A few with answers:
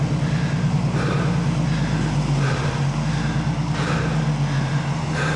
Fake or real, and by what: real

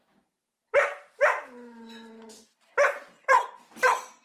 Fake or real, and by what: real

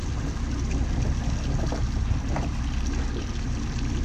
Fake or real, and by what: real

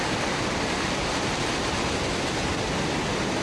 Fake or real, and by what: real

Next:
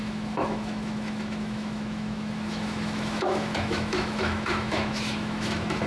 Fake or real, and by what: fake, autoencoder, DAC-VAE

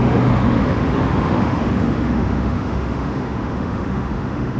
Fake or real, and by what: fake, autoencoder, DAC-VAE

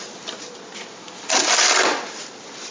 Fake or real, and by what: real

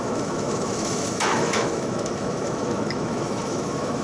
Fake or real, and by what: fake, autoencoder, DAC-VAE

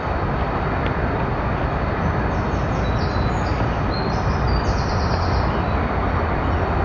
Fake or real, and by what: real